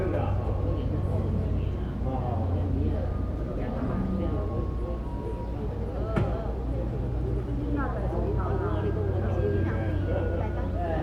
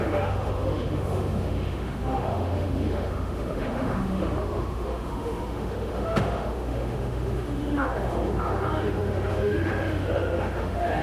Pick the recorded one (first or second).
first